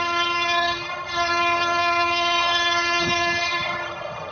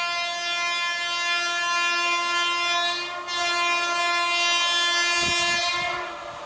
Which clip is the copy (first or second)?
first